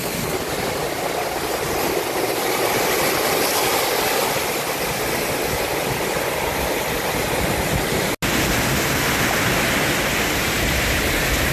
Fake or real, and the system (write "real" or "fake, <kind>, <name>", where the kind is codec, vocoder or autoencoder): real